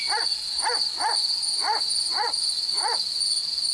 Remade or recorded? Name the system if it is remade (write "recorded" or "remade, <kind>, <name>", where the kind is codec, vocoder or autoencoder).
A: remade, vocoder, Vocos